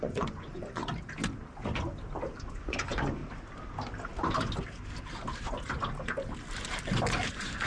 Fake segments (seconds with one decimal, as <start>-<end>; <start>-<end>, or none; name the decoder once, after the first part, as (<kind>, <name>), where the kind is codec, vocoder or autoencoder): 0.0-0.8 (vocoder, Vocos); 2.6-3.2; 7.3-7.7